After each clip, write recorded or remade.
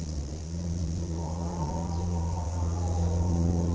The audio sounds remade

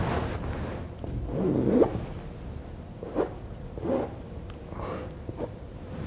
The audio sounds recorded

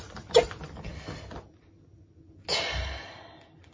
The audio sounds recorded